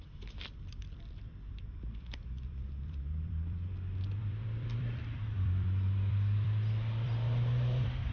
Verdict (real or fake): fake